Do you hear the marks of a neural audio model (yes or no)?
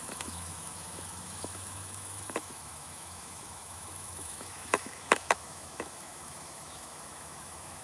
yes